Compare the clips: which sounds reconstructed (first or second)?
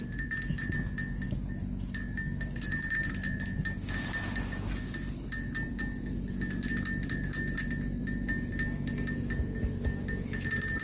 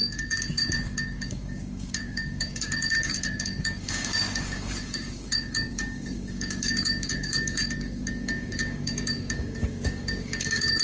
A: second